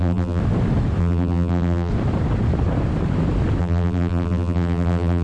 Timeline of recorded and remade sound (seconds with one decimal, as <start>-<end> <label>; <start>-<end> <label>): 0.0-0.4 remade; 0.4-1.0 recorded; 1.0-1.9 remade; 1.9-3.6 recorded; 3.6-5.2 remade